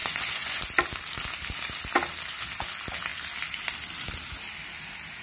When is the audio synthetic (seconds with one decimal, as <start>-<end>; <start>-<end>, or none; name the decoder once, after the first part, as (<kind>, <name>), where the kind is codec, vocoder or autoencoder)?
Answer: 0.0-0.6 (vocoder, Vocos)